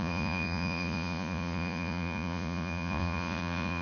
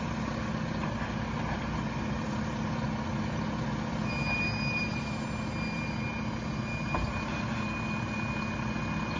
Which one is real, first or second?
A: second